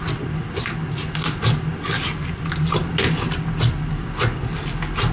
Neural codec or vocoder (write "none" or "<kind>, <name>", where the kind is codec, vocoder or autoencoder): none